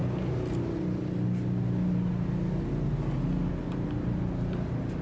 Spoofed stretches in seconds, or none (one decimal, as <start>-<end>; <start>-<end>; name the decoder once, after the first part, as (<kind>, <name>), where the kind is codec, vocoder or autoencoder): none